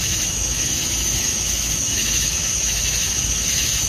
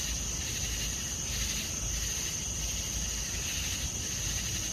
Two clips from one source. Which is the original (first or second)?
second